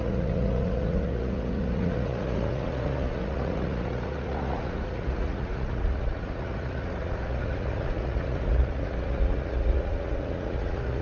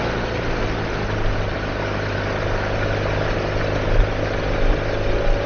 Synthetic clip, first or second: first